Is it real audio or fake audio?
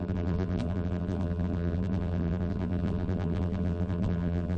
fake